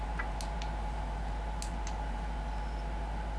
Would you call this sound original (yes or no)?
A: yes